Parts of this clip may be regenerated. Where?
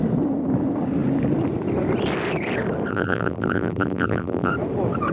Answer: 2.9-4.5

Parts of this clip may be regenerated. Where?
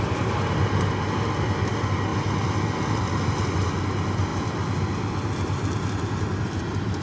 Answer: none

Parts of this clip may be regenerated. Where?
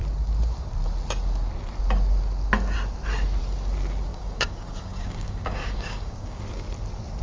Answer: 4.1-6.4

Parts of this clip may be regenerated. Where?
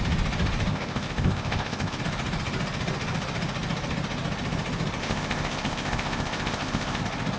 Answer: 0.7-2.0; 5.0-7.0